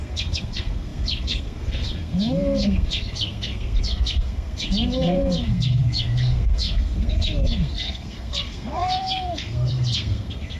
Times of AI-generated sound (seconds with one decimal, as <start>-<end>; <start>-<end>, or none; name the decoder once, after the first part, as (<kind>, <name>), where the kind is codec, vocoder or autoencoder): 0.0-10.6 (codec, SNAC)